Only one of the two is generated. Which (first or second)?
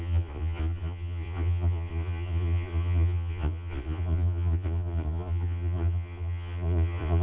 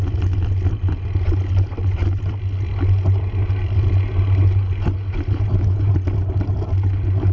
first